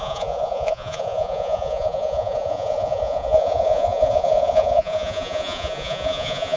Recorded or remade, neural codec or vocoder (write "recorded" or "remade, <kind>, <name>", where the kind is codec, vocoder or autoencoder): remade, vocoder, Vocos